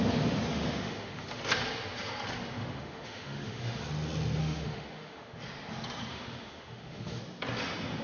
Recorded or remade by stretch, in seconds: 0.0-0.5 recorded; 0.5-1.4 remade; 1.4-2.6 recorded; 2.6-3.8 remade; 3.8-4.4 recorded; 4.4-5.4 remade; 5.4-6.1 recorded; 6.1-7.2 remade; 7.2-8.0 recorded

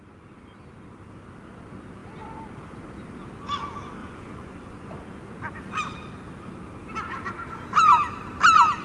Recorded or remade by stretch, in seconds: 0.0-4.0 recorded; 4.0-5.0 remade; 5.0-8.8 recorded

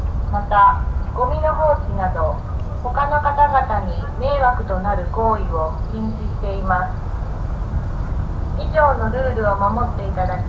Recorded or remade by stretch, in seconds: 0.0-5.9 recorded; 5.9-6.4 remade; 6.4-10.5 recorded

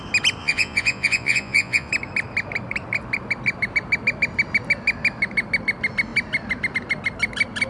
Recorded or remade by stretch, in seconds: 0.0-0.4 recorded; 0.4-1.9 remade; 1.9-7.7 recorded

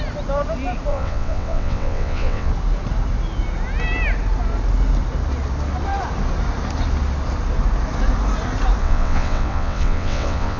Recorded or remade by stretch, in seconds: 0.0-0.9 recorded; 0.9-2.5 remade; 2.5-8.8 recorded; 8.8-10.6 remade